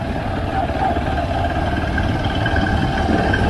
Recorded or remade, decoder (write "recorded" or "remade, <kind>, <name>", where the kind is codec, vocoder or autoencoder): recorded